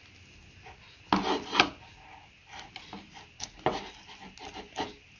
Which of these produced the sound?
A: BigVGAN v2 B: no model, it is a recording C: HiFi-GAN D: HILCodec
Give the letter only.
B